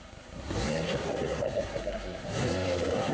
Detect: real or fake fake